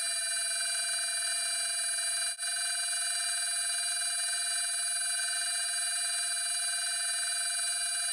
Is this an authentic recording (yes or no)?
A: yes